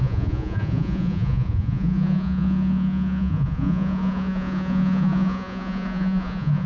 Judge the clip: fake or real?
fake